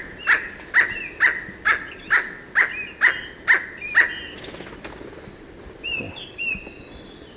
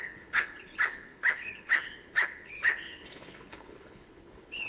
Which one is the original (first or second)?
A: first